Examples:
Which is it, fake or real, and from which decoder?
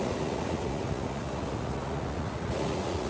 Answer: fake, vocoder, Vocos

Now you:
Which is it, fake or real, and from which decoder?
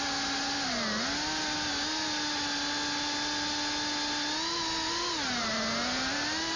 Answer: real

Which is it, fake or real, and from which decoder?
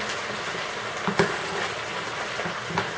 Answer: real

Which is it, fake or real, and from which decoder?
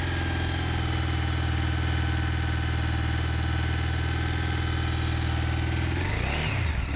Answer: real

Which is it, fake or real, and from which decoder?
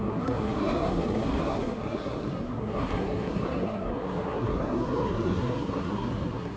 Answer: fake, codec, SNAC